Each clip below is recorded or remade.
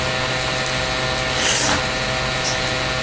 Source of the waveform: recorded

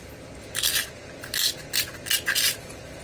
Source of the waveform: recorded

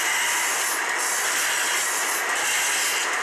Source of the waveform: recorded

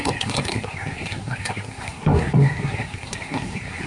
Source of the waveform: remade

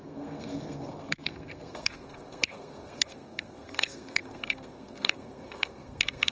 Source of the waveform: remade